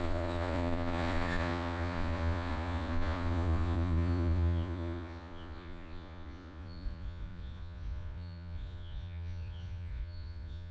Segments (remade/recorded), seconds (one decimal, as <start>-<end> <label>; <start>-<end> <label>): 0.0-10.7 remade